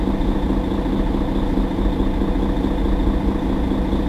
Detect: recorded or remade recorded